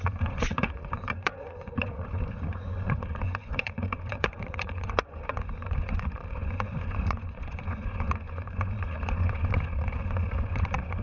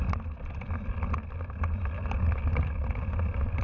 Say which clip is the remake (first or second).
first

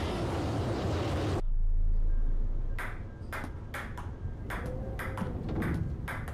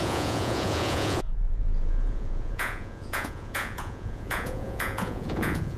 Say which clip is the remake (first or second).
second